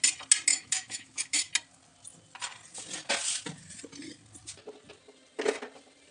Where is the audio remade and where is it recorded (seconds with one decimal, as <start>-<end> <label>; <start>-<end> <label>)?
0.0-0.5 recorded; 0.5-1.5 remade; 1.5-6.1 recorded